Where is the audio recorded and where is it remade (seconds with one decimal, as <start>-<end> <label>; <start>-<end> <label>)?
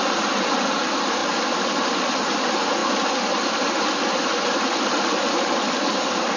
0.0-6.4 recorded